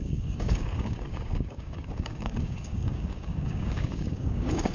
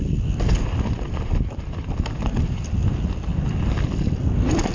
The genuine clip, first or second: second